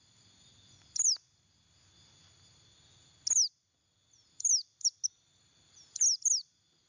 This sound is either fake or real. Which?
real